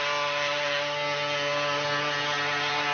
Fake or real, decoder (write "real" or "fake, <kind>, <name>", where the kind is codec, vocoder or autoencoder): real